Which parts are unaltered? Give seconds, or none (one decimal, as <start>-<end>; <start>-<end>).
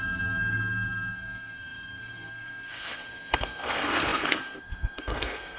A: none